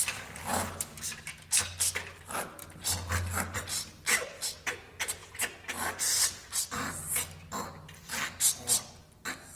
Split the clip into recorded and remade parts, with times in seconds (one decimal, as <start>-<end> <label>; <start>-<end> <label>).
0.0-9.6 recorded